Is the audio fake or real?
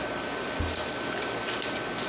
real